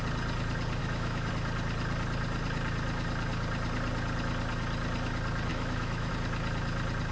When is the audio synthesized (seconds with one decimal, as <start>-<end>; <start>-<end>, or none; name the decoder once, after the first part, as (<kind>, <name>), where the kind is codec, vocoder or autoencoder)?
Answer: 0.8-1.3 (autoencoder, DAC-VAE); 5.5-6.1